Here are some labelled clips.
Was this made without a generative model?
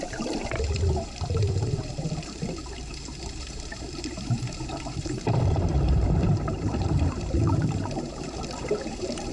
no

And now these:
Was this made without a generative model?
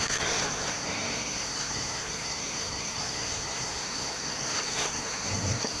no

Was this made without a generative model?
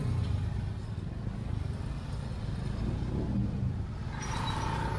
yes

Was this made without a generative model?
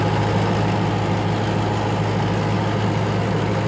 yes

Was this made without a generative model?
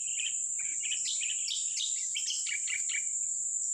yes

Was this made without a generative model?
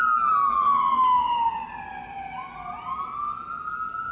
yes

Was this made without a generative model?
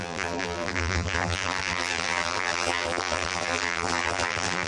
no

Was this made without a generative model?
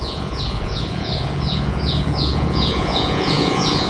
no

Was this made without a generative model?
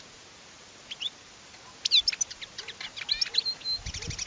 yes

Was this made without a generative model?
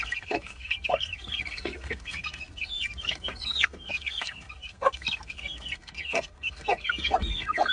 no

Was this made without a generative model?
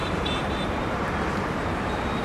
no